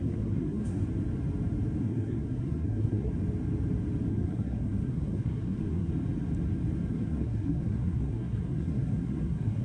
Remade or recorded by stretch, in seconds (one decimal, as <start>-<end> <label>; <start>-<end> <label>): 0.0-0.8 remade; 0.8-1.8 recorded; 1.8-3.1 remade; 3.1-4.1 recorded; 4.1-5.9 remade; 5.9-6.9 recorded; 6.9-9.6 remade